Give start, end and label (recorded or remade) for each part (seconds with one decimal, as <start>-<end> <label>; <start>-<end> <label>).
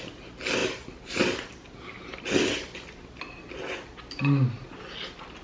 0.0-0.6 recorded; 0.6-3.2 remade; 3.2-5.4 recorded